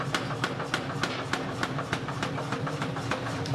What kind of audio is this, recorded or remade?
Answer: remade